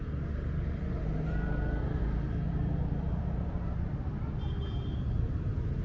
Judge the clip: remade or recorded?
recorded